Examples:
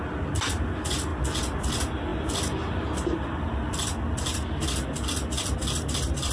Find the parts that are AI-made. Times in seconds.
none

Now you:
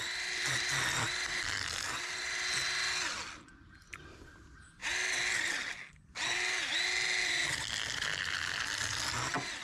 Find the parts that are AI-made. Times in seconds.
none

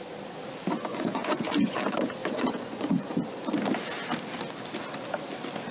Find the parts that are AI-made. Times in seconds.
0.9-1.8; 2.2-3.1